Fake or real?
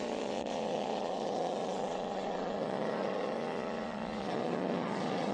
fake